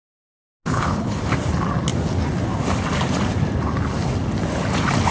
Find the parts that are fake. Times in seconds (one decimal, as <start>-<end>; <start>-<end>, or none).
0.7-1.2